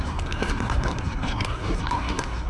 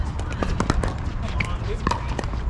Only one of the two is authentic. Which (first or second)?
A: second